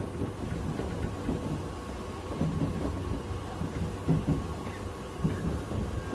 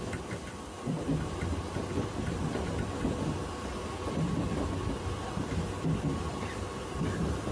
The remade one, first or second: second